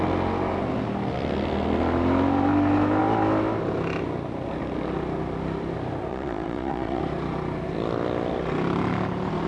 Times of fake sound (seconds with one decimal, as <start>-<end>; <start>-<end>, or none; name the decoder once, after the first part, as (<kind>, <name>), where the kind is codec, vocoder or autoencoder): 6.1-7.0 (vocoder, Vocos)